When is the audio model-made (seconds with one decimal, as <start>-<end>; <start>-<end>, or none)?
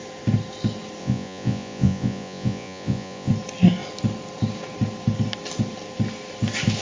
1.0-3.3